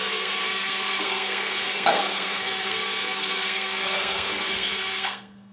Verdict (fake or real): fake